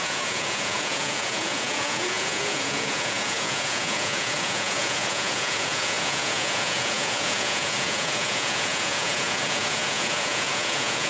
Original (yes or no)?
no